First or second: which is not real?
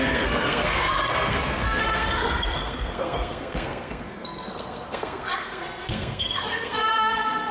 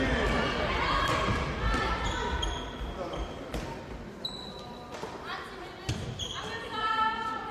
first